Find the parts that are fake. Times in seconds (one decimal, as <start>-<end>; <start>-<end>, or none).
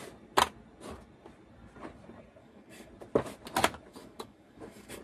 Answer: 2.4-2.9; 3.9-5.0